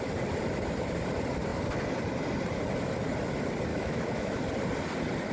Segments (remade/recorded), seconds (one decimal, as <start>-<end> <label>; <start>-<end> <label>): 0.0-3.7 recorded; 3.7-4.4 remade; 4.4-5.3 recorded